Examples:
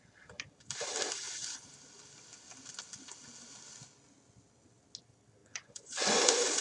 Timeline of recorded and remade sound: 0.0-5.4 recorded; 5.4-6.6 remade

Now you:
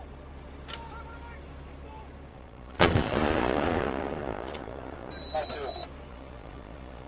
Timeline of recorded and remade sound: 0.0-2.3 recorded; 2.3-5.1 remade; 5.1-6.1 recorded; 6.1-7.1 remade

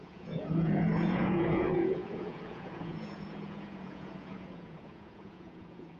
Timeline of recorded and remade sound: 0.0-6.0 remade

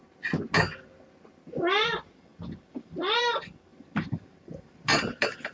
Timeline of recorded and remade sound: 0.0-5.5 recorded

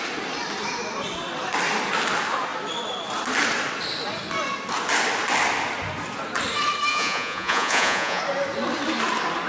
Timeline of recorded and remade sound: 0.0-6.9 recorded; 6.9-8.2 remade; 8.2-9.5 recorded